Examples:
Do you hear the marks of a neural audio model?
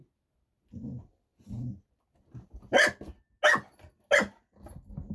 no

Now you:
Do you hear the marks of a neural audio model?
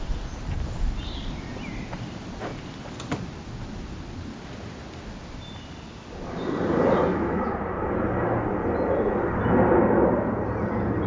no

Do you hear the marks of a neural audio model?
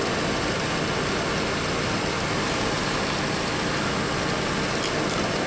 no